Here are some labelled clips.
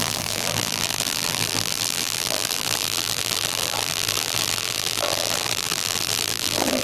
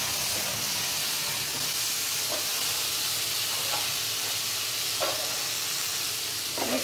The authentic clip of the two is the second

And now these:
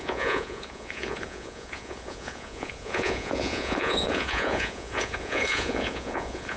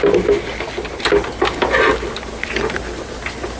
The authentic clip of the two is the second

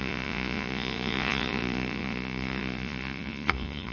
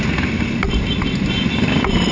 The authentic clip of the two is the second